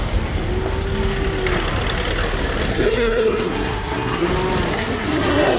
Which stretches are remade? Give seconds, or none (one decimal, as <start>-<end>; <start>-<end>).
2.7-4.3; 4.7-5.6